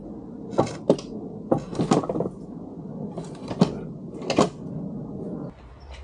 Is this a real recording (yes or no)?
yes